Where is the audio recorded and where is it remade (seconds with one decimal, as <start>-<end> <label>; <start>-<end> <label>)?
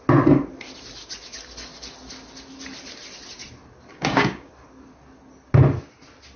0.0-3.9 recorded; 3.9-4.5 remade; 4.5-6.4 recorded